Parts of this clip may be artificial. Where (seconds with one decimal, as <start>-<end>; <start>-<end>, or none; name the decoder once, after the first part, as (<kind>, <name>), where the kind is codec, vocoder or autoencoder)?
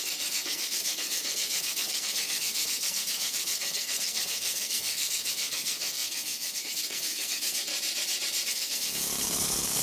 0.0-7.7 (codec, SNAC); 8.5-9.8